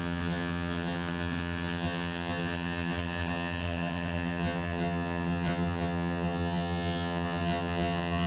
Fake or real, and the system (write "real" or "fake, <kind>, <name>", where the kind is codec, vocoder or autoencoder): fake, vocoder, HiFi-GAN